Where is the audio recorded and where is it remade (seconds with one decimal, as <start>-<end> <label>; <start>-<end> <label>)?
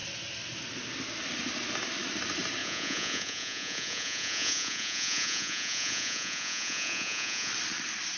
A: 0.0-2.6 recorded; 2.6-7.5 remade; 7.5-8.2 recorded